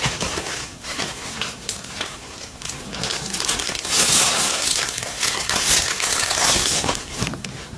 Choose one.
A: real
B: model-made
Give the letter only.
B